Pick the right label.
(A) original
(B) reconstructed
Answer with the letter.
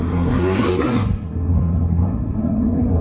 B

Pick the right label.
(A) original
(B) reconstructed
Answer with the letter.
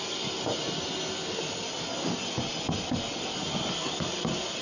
A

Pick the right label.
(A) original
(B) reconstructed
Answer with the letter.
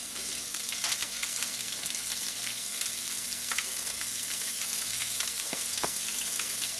B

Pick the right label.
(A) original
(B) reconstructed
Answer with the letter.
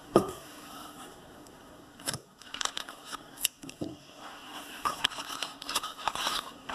B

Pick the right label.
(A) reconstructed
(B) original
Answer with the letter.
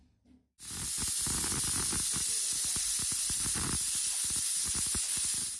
B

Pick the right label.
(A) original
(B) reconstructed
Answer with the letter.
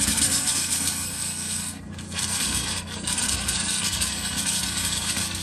B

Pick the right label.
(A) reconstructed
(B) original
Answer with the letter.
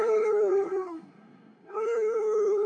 A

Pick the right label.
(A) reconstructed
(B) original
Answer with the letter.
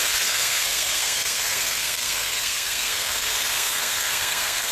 A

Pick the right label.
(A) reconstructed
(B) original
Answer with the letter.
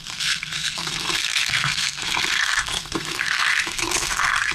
A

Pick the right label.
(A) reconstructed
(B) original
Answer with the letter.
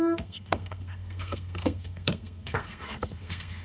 A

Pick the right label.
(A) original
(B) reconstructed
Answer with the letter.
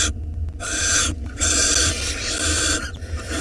A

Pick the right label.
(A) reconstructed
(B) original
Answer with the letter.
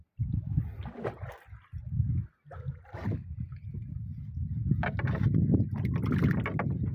B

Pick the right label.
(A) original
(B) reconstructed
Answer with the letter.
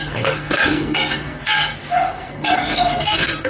B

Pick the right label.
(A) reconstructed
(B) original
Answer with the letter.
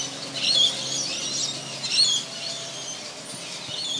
B